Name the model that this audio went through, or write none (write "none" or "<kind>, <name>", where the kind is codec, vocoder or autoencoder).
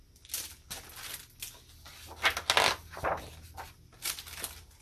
none